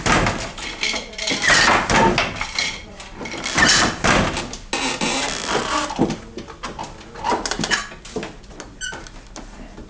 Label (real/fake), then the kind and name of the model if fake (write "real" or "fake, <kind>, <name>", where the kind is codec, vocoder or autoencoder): real